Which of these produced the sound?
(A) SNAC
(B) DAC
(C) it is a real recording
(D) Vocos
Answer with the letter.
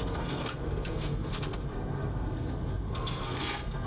A